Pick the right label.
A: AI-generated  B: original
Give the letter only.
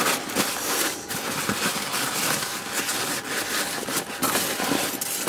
B